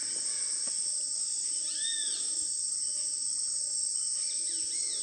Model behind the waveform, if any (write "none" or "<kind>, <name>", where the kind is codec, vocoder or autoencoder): none